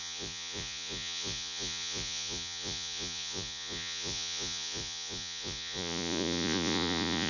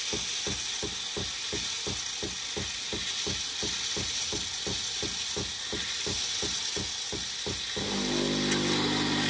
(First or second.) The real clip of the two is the second